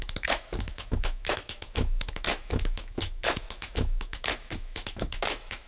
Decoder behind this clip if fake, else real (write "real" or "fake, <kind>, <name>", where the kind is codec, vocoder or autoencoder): fake, autoencoder, DAC-VAE